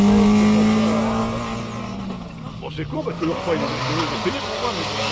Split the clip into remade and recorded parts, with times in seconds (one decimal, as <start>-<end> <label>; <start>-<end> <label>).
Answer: 0.0-5.1 recorded